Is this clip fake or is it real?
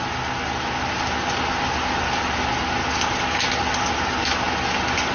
real